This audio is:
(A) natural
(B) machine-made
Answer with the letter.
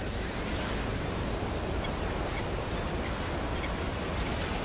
A